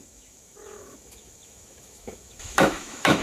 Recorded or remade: remade